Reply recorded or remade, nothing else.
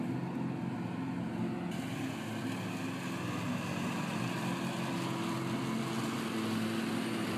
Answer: recorded